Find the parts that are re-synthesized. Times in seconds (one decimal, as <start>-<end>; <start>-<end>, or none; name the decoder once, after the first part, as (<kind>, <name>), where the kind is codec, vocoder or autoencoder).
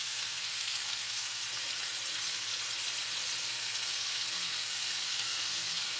0.0-1.4 (codec, SNAC); 2.1-2.5; 3.5-6.0